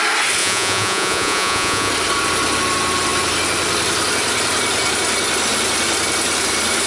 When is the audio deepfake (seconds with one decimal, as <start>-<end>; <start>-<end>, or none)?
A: 0.4-1.9